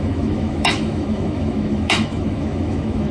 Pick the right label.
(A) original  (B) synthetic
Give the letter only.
B